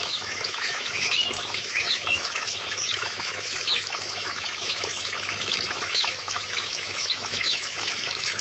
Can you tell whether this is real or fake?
fake